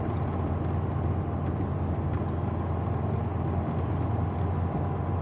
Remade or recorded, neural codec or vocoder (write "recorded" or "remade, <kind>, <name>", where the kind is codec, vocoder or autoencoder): recorded